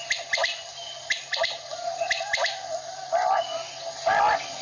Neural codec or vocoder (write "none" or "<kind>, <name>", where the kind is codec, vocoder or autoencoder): none